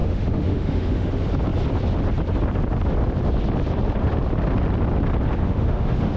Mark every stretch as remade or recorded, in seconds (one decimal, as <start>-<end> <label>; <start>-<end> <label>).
0.0-1.1 remade; 1.1-5.4 recorded; 5.4-6.2 remade